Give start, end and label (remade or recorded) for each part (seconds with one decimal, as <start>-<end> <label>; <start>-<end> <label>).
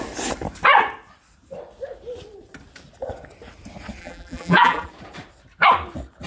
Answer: 0.0-4.0 recorded; 4.0-4.9 remade; 4.9-6.3 recorded